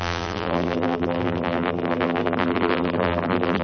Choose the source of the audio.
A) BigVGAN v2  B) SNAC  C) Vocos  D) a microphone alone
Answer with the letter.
A